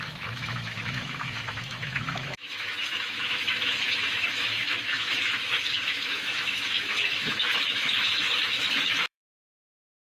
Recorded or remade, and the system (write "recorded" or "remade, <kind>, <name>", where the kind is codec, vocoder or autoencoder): remade, autoencoder, DAC-VAE